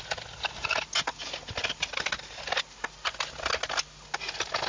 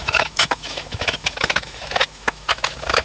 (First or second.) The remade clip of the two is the second